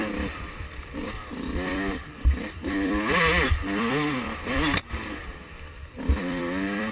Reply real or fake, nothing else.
fake